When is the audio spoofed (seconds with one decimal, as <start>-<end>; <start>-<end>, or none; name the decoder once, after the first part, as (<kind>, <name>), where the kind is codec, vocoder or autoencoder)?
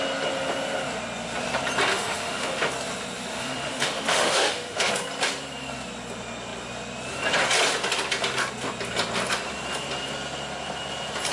1.9-2.7 (autoencoder, DAC-VAE); 3.3-4.9